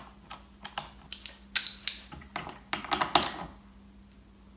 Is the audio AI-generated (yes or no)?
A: no